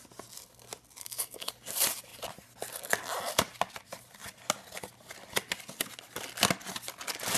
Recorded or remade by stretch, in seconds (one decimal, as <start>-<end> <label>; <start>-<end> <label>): 0.0-1.0 recorded; 1.0-1.5 remade; 1.5-7.4 recorded